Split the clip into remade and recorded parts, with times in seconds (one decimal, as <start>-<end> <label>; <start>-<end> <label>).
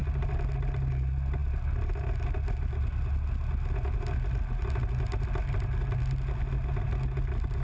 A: 0.0-7.6 recorded